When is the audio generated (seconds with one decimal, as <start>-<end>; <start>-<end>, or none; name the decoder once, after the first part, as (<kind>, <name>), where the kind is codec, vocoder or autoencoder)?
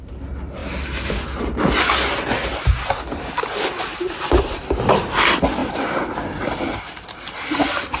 none